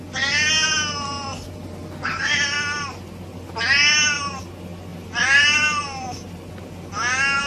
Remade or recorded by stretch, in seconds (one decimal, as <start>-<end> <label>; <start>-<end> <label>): 0.0-1.3 recorded; 1.3-1.8 remade; 1.8-4.9 recorded; 4.9-6.5 remade; 6.5-7.5 recorded